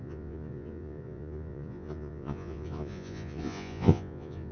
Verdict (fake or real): fake